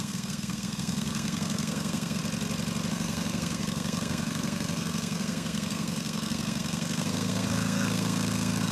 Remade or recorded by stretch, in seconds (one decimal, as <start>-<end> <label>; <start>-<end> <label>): 0.0-2.2 remade; 2.2-2.9 recorded; 2.9-8.7 remade